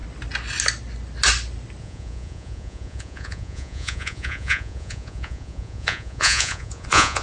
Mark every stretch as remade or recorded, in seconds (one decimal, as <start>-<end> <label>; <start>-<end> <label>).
0.0-1.8 recorded; 1.8-7.2 remade